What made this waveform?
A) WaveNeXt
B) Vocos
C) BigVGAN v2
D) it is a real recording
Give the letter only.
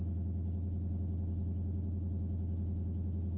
D